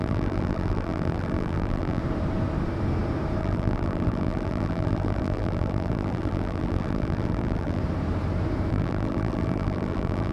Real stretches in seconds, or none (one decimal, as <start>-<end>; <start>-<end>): 2.0-3.4; 7.8-8.7